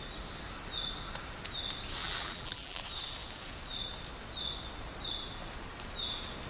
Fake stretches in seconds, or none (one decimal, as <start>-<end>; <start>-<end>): 2.0-2.8